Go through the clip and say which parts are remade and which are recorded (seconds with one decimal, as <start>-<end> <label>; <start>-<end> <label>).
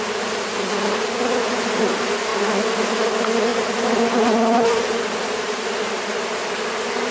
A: 0.0-2.3 recorded; 2.3-2.8 remade; 2.8-3.5 recorded; 3.5-7.1 remade